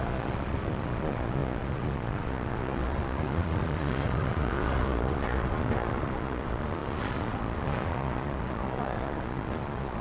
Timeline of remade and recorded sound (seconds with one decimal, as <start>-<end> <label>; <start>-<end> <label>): 0.0-10.0 remade

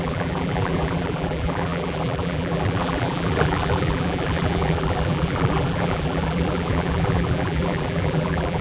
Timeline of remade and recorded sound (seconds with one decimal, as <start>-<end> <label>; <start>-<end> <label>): 0.0-8.6 remade

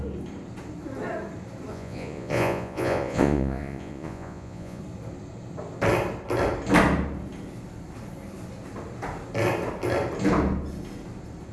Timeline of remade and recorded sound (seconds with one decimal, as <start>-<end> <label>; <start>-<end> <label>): 0.0-1.7 recorded; 1.7-4.8 remade; 4.8-11.5 recorded